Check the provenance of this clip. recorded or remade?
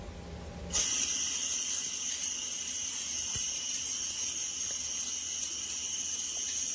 recorded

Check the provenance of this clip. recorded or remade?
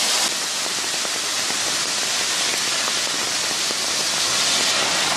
recorded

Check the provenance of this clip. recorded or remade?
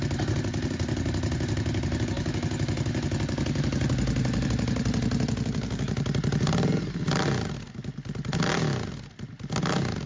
recorded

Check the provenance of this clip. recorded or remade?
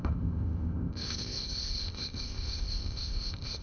remade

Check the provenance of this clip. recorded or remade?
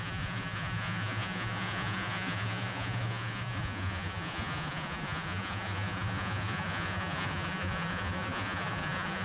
remade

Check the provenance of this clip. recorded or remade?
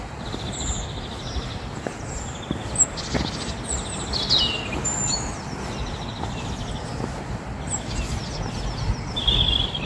recorded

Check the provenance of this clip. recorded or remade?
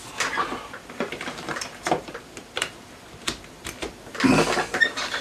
remade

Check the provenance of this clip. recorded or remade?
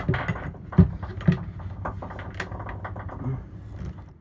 recorded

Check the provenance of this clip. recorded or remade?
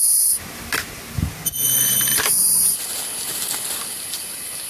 recorded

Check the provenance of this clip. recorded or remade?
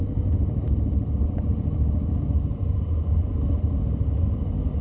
recorded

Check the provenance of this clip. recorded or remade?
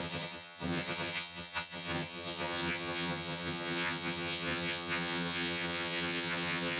remade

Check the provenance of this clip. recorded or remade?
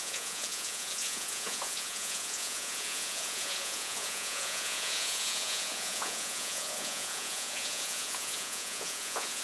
remade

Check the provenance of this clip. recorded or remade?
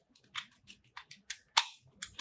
recorded